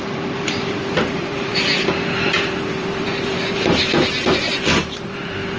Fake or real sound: fake